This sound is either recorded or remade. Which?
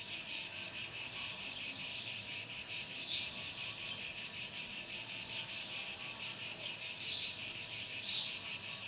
remade